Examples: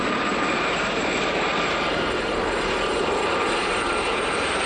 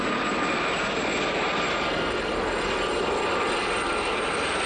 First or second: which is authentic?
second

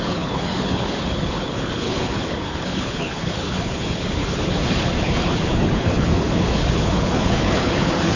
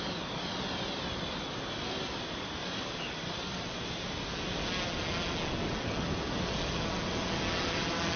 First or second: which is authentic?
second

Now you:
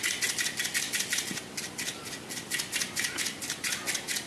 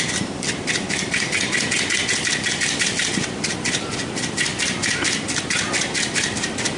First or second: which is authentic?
first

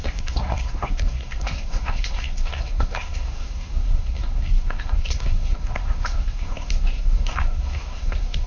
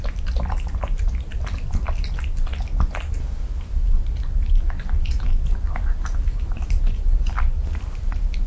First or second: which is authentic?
second